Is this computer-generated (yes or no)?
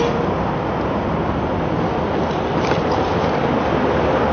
no